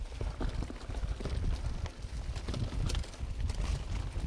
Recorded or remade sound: recorded